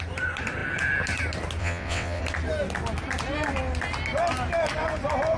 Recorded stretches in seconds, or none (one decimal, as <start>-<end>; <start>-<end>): 0.0-1.6; 2.2-5.4